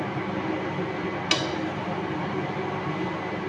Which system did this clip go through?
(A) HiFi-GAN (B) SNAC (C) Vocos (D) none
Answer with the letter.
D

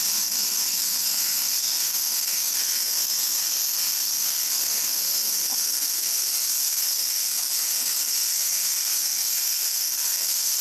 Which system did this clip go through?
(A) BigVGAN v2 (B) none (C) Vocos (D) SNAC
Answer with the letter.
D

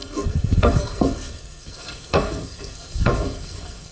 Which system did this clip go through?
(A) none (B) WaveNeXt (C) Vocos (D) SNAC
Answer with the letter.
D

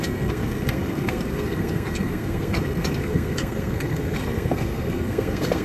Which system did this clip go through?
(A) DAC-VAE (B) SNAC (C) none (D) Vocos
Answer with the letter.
B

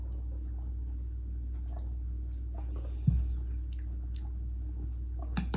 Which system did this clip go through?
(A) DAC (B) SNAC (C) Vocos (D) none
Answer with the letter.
D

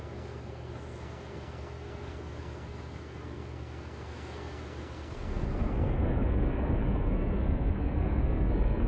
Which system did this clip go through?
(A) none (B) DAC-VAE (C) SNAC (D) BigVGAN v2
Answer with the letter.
C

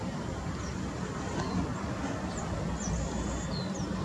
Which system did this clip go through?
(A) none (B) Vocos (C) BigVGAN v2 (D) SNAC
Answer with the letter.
A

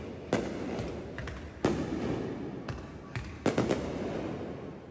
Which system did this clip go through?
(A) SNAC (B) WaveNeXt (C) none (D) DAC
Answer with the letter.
C